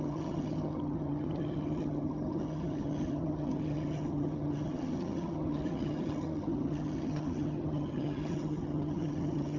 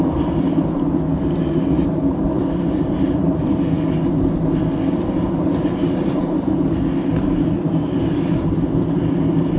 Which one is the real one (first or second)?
second